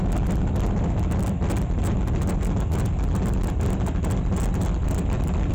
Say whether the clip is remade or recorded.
recorded